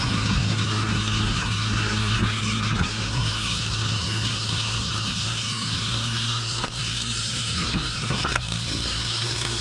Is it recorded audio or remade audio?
remade